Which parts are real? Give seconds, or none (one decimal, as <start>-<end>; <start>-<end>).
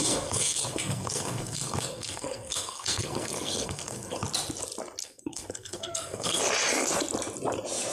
4.2-5.0; 6.4-7.9